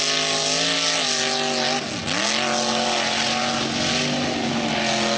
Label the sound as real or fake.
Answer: real